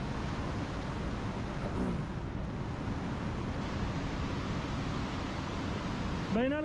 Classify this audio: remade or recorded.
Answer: recorded